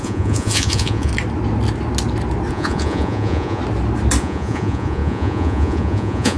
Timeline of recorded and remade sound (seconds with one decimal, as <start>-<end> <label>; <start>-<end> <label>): 0.0-1.1 remade; 1.1-2.5 recorded; 2.5-3.6 remade; 3.6-4.2 recorded; 4.2-6.4 remade